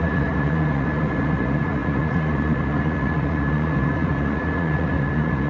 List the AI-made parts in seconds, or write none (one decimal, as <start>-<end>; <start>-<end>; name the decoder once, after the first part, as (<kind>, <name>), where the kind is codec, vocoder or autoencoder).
0.0-5.5 (vocoder, Vocos)